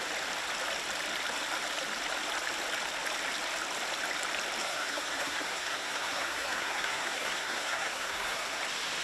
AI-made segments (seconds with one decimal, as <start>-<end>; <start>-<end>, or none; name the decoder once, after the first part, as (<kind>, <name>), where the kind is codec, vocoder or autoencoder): 4.6-8.6 (codec, SNAC)